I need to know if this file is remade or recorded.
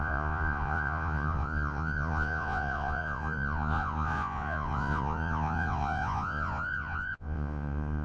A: remade